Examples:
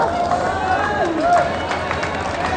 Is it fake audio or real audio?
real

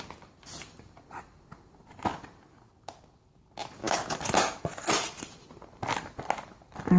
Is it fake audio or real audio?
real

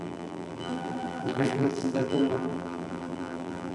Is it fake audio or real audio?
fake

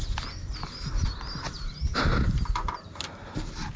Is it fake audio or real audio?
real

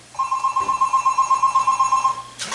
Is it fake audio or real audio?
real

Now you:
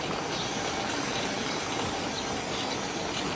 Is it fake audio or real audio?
real